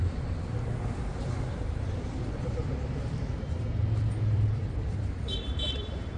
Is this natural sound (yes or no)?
no